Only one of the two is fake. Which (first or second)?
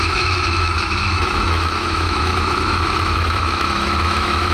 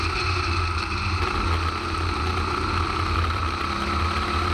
first